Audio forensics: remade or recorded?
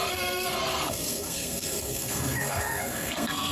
remade